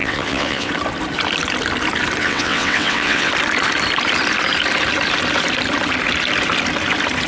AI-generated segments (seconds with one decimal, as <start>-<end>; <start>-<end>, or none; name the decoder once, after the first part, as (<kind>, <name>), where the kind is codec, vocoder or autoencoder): 0.0-0.7 (vocoder, WaveNeXt); 2.2-3.3